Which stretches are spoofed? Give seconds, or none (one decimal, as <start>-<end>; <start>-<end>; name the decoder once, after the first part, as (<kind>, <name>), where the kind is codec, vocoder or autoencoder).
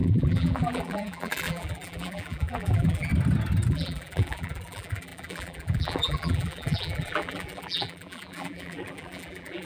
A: 0.0-3.1 (vocoder, BigVGAN v2); 3.7-9.7